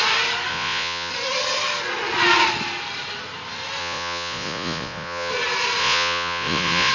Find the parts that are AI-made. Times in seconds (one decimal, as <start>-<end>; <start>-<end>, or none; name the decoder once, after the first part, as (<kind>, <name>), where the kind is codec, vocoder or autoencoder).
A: 0.5-1.1 (vocoder, Vocos); 3.8-5.3; 5.8-6.9